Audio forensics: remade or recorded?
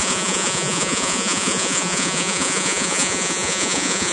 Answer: remade